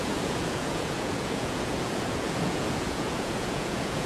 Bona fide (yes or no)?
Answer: no